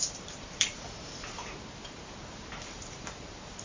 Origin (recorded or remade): remade